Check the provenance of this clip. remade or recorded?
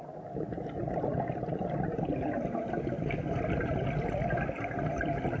recorded